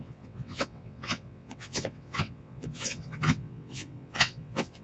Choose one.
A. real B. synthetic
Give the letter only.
B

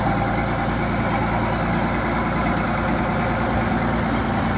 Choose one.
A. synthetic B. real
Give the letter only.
B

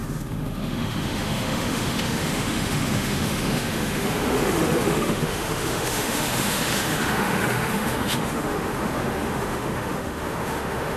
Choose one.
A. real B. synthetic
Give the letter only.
B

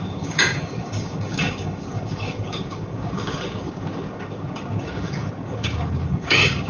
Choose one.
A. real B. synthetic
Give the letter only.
B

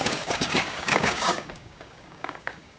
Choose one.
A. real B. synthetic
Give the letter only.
B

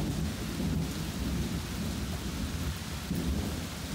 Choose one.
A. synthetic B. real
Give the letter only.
B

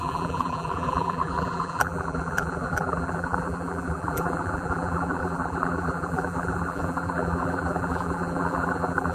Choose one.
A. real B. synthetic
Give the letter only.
B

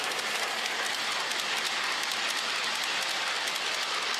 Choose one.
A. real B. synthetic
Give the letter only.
A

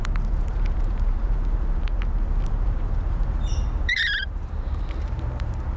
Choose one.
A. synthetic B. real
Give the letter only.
A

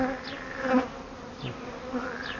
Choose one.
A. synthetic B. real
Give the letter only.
B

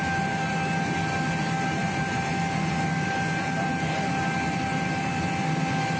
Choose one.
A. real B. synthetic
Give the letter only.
A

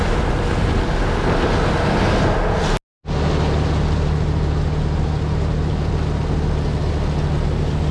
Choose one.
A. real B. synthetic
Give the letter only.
A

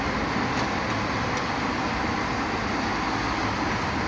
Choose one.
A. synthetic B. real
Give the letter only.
B